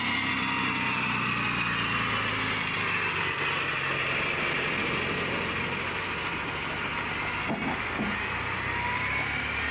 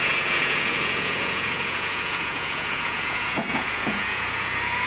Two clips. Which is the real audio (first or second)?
first